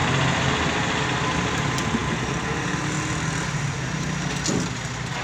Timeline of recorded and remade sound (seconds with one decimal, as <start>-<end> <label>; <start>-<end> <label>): 0.0-5.2 recorded